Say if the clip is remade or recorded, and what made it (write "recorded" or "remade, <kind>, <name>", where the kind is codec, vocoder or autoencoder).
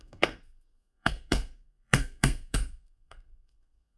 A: remade, codec, SNAC